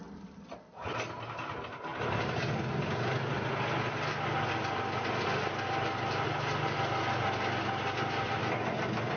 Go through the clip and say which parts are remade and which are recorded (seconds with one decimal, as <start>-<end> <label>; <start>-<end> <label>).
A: 0.0-9.2 recorded